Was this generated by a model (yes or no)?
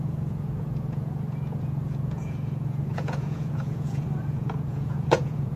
yes